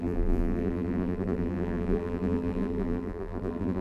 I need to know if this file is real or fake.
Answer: fake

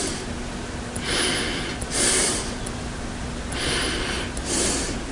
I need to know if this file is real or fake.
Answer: real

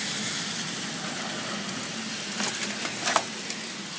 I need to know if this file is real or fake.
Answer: real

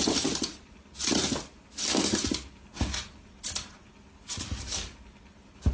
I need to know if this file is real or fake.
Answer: real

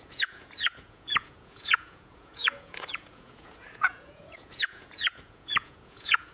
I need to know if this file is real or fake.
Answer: fake